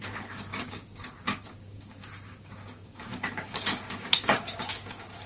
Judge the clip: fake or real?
fake